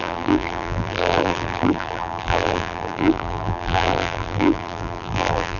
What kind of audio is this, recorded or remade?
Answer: remade